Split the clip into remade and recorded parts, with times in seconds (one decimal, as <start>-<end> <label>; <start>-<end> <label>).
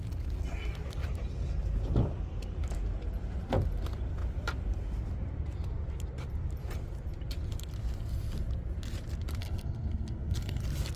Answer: 0.0-9.4 recorded; 9.4-10.6 remade; 10.6-11.0 recorded